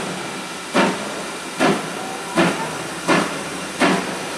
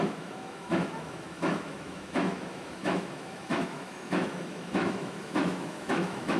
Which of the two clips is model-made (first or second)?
second